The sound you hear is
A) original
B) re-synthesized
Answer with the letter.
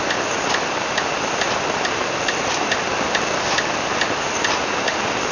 A